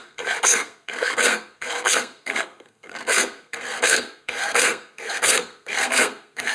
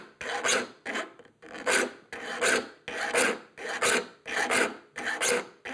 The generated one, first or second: first